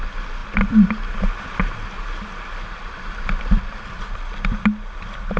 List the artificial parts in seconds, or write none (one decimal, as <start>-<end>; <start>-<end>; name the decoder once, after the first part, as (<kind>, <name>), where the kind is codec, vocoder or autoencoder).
none